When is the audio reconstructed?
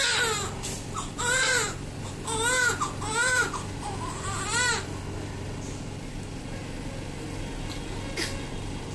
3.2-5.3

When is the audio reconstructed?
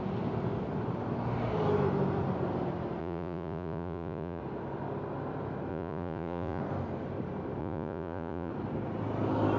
3.0-4.4; 5.7-6.6; 7.6-8.5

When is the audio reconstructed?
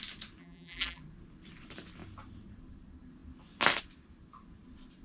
0.4-1.0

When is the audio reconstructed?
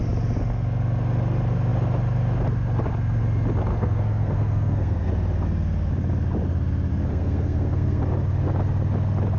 3.7-5.1; 6.9-8.0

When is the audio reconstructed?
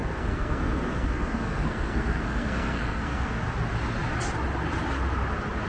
0.0-3.4